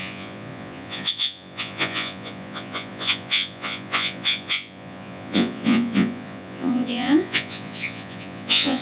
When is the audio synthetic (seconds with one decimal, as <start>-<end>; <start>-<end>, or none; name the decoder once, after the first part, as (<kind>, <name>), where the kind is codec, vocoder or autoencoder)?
0.0-8.8 (vocoder, Vocos)